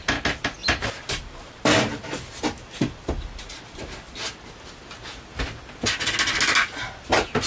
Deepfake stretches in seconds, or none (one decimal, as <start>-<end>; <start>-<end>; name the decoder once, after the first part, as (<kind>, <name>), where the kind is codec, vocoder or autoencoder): 0.6-1.9 (vocoder, BigVGAN v2)